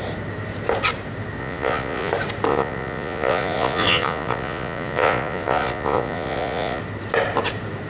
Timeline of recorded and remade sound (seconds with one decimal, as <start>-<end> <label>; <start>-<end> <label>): 0.0-1.4 recorded; 1.4-2.1 remade; 2.1-2.5 recorded; 2.5-6.8 remade; 6.8-7.9 recorded